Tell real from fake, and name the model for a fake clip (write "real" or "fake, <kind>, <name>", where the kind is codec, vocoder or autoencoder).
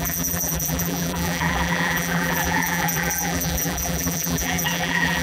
fake, vocoder, BigVGAN v2